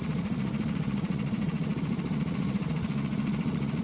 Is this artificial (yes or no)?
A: yes